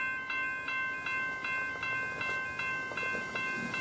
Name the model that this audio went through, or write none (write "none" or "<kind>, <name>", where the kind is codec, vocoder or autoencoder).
none